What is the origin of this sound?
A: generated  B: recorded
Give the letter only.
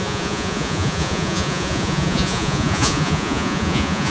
A